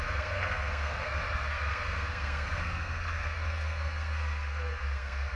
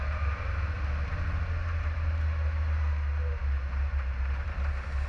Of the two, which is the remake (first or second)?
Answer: first